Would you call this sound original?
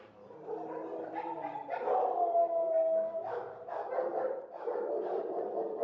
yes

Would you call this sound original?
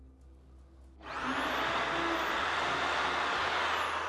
yes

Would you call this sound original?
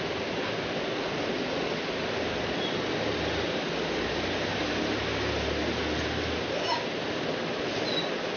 yes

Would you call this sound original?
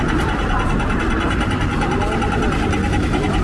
yes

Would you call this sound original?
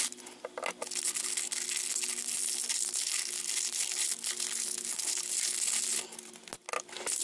yes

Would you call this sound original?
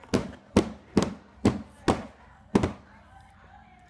yes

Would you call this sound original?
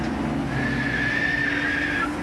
yes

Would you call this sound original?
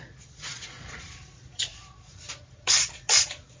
no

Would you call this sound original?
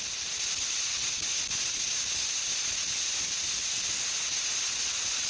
yes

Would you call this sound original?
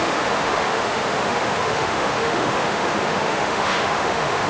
no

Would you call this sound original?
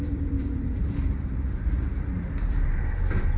no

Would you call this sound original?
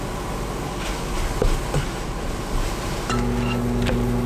yes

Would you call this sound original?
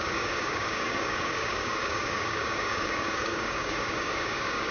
no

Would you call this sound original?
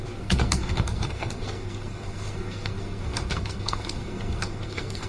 no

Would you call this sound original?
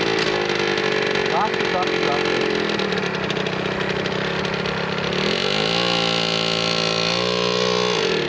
yes